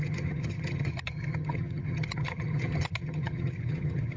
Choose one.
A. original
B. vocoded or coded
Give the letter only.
B